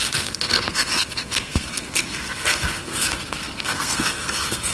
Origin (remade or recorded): remade